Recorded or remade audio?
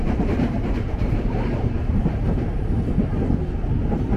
remade